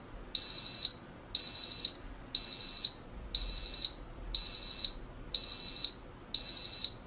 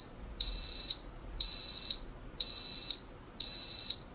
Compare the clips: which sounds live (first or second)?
first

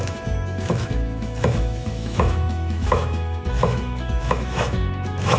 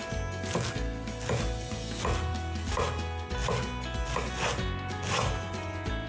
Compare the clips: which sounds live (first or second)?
second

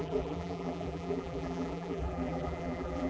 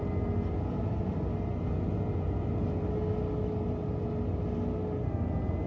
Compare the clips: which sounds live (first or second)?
second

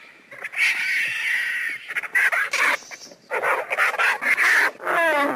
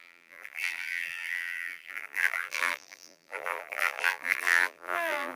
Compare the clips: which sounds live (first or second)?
first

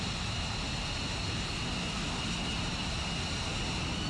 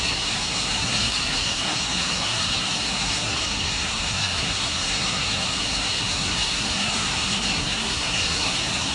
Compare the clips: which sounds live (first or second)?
first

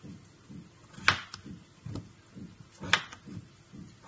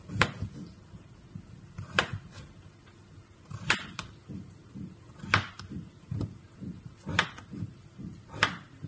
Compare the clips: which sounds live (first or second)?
first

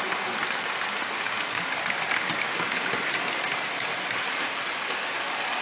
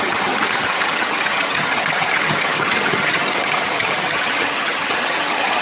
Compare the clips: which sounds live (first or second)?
first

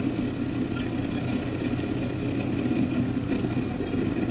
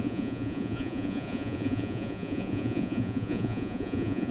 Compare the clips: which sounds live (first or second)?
first